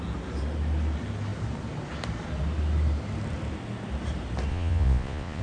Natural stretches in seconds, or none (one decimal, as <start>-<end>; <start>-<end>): 0.0-4.5